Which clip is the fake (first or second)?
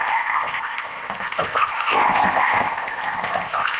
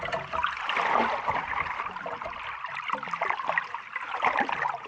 first